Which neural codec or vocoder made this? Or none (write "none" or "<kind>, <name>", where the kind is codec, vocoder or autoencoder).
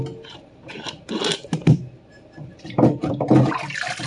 none